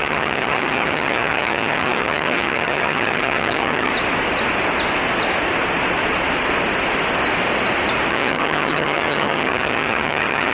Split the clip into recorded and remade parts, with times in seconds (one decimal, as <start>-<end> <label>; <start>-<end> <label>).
0.0-3.9 remade; 3.9-8.1 recorded; 8.1-10.5 remade